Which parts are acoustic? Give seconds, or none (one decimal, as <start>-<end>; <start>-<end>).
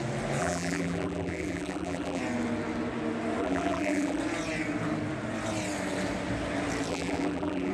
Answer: 0.0-0.4; 2.2-3.4; 4.2-6.9